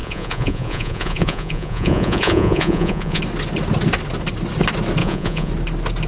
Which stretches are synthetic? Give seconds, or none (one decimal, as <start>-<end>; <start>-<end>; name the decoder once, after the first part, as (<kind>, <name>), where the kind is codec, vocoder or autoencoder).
0.0-3.2 (vocoder, Vocos); 5.0-5.5